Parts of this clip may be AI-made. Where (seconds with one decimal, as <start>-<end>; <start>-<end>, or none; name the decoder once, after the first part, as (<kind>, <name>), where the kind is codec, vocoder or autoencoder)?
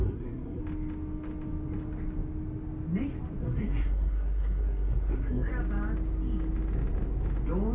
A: 0.0-0.6 (codec, SNAC); 3.4-5.5